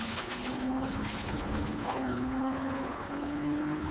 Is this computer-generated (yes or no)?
yes